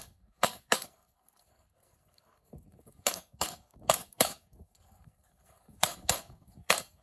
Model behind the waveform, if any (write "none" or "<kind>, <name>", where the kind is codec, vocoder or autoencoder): codec, SNAC